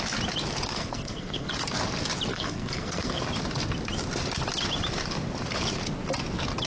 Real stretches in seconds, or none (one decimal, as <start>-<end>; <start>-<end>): 0.0-0.7; 1.5-2.3; 3.2-6.7